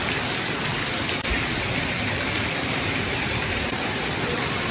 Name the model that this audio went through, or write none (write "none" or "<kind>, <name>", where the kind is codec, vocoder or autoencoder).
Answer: vocoder, BigVGAN v2